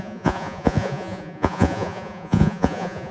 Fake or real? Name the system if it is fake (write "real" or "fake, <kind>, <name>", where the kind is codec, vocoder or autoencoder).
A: fake, vocoder, Vocos